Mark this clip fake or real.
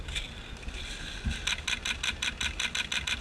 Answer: real